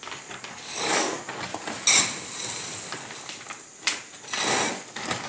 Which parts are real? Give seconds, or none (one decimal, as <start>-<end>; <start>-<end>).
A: 1.5-4.7